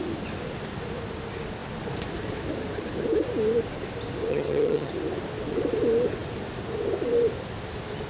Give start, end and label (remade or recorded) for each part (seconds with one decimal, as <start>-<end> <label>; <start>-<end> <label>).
0.0-4.3 recorded; 4.3-4.9 remade; 4.9-8.1 recorded